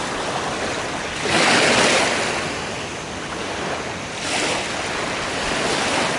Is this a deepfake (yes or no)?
no